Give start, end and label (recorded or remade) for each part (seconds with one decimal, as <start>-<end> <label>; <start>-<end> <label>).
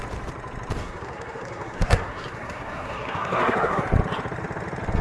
0.0-0.8 recorded; 0.8-3.8 remade; 3.8-5.0 recorded